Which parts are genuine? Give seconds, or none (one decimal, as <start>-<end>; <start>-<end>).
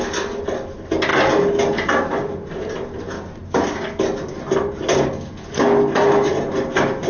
0.0-7.1